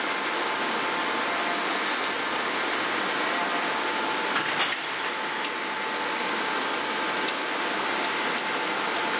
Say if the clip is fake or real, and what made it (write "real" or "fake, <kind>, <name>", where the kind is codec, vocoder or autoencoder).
real